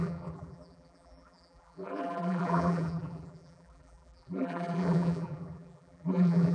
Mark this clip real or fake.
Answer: fake